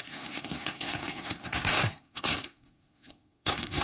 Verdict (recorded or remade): remade